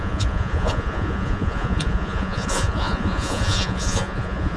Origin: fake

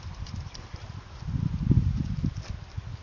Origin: real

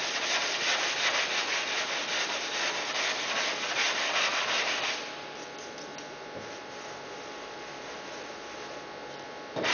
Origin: real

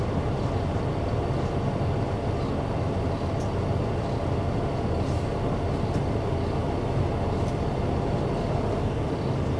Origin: real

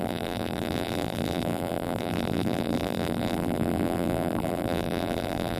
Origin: fake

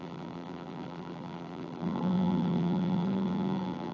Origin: fake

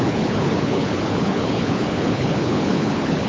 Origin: fake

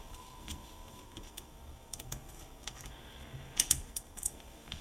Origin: fake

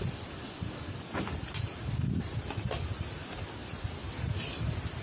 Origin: real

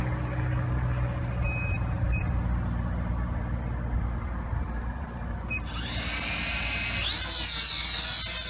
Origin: real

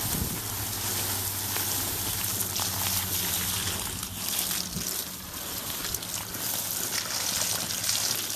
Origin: real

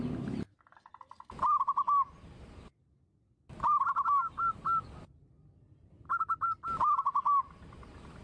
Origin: real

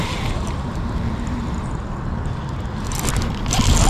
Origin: real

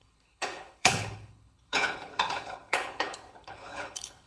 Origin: fake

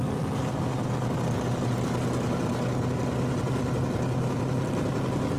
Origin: real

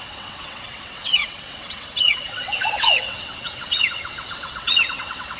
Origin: fake